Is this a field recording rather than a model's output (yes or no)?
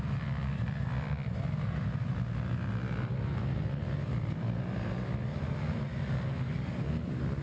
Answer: yes